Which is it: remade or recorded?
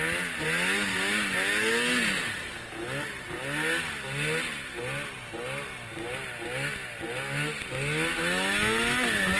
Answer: recorded